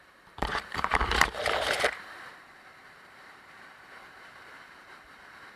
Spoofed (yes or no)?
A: yes